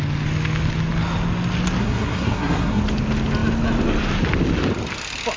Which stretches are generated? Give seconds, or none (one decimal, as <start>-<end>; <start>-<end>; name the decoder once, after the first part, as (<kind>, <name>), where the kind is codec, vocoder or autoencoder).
1.8-2.8 (codec, SNAC)

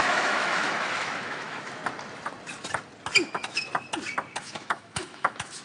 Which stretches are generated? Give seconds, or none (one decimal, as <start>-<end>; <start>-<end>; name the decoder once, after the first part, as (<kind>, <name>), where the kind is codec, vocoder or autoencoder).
0.0-1.8 (autoencoder, DAC-VAE); 3.3-3.7; 4.4-5.6

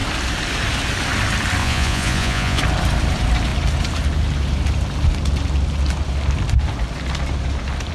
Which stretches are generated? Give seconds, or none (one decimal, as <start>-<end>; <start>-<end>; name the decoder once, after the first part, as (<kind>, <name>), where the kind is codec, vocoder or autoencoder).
1.6-2.6 (vocoder, Vocos)

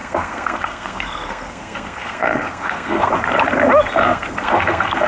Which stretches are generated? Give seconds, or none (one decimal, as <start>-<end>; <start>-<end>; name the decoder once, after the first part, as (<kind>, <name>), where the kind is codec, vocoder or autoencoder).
0.0-3.1 (codec, SNAC); 4.0-5.1